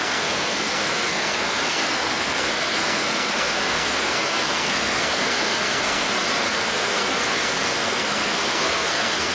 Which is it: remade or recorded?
remade